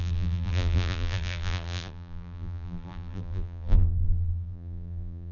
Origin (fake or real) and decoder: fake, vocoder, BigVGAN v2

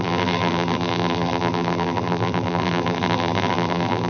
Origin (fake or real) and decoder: fake, vocoder, BigVGAN v2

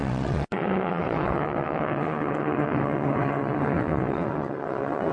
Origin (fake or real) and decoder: fake, vocoder, WaveNeXt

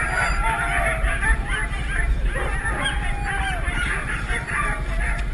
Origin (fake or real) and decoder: real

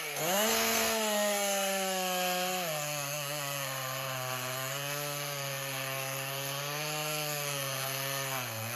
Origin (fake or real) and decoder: fake, codec, SNAC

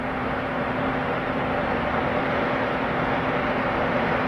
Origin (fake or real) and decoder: fake, vocoder, BigVGAN v2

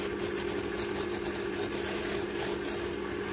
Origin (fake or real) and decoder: real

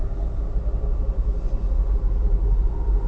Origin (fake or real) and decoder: real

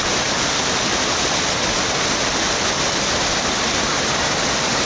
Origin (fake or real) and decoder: real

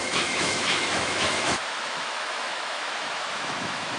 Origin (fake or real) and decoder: fake, autoencoder, DAC-VAE